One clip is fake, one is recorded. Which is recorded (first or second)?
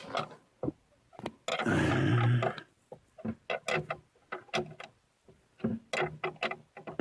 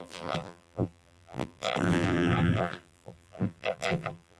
first